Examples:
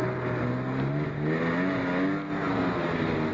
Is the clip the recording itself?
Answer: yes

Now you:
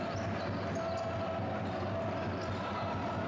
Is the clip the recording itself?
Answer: yes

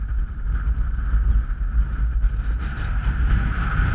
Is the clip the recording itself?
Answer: yes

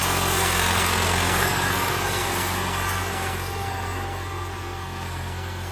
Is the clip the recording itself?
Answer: no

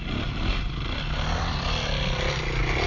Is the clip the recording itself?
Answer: yes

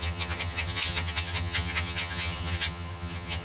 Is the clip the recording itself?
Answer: no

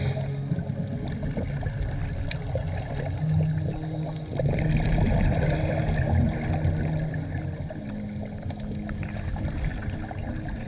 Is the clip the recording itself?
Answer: yes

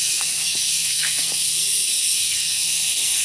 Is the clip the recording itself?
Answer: no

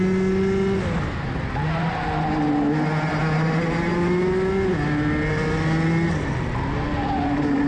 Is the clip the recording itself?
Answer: yes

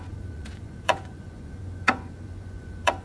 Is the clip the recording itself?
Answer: no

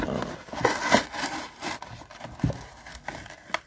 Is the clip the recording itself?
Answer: yes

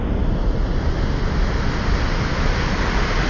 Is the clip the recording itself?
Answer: yes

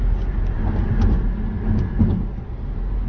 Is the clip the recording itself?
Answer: yes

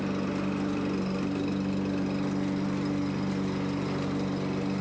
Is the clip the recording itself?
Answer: yes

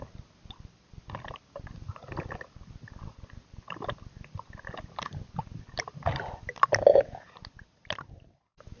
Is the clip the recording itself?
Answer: yes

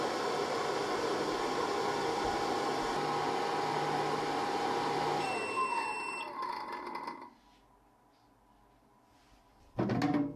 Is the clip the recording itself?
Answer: yes